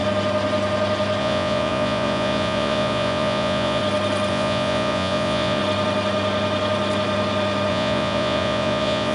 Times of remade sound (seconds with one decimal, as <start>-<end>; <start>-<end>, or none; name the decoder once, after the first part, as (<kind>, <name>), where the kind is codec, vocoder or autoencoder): 1.2-3.8 (vocoder, Vocos); 4.3-5.6; 7.7-9.1